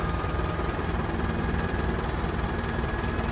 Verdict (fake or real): fake